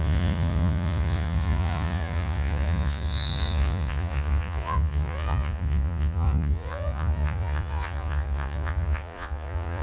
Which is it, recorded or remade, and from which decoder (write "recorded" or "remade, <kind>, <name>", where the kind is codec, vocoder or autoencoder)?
remade, vocoder, Vocos